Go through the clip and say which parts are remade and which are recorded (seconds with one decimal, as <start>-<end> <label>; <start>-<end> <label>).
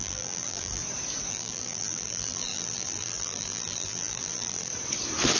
0.0-0.8 remade; 0.8-1.3 recorded; 1.3-4.7 remade; 4.7-5.4 recorded